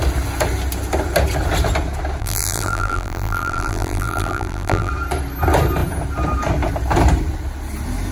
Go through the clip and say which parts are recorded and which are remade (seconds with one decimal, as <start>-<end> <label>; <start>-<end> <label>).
0.0-2.2 recorded; 2.2-4.9 remade; 4.9-8.1 recorded